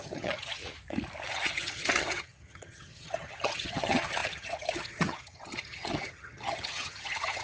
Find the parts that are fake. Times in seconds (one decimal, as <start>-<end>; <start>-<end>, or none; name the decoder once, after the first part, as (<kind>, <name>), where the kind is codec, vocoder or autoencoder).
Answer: 0.0-0.6 (vocoder, HiFi-GAN); 1.3-7.4